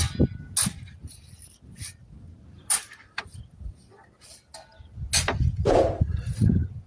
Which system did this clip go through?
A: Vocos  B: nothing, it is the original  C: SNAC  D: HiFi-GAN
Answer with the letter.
B